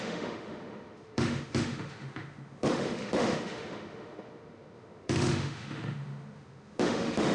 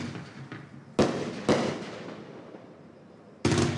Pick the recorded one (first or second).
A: second